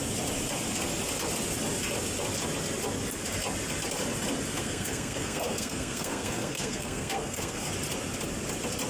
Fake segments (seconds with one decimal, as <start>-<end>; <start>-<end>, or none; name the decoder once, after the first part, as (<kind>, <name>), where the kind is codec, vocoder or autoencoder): 4.6-7.7 (codec, SNAC)